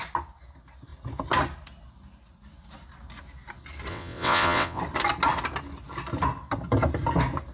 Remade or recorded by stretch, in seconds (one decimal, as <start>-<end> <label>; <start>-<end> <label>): 0.0-3.9 recorded; 3.9-4.8 remade; 4.8-7.5 recorded